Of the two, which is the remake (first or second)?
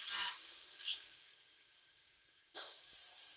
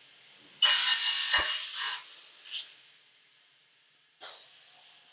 first